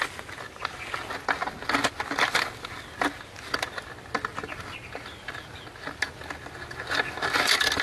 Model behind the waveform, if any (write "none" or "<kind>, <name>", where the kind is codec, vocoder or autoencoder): none